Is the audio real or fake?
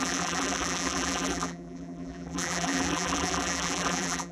fake